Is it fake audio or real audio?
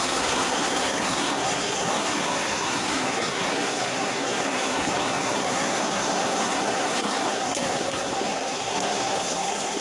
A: fake